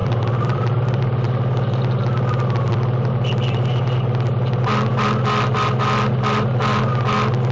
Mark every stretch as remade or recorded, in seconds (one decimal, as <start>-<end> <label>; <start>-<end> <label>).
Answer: 0.0-1.0 remade; 1.0-7.5 recorded

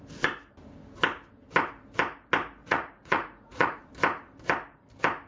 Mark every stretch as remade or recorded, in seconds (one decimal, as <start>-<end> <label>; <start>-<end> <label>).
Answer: 0.0-2.6 recorded; 2.6-3.8 remade; 3.8-5.3 recorded

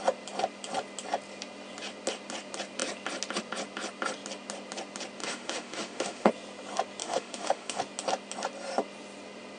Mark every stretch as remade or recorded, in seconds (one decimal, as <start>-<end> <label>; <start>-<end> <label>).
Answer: 0.0-5.2 recorded; 5.2-6.3 remade; 6.3-7.0 recorded; 7.0-7.8 remade; 7.8-9.6 recorded

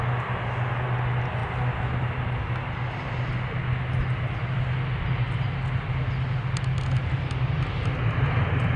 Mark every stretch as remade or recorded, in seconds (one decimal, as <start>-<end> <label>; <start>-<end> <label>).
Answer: 0.0-8.8 recorded

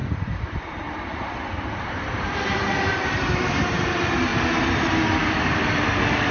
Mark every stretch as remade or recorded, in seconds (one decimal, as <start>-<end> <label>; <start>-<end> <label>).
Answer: 0.0-2.4 remade; 2.4-6.3 recorded

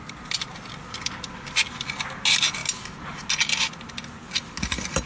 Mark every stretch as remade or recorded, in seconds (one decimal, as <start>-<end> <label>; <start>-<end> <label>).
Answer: 0.0-5.1 recorded

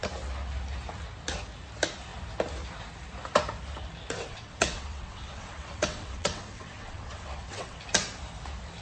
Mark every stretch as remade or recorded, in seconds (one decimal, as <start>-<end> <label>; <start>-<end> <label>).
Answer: 0.0-4.3 recorded; 4.3-7.8 remade; 7.8-8.8 recorded